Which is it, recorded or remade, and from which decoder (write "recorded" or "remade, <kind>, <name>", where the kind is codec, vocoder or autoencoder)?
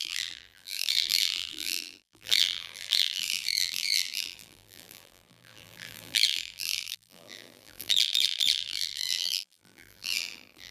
remade, vocoder, BigVGAN v2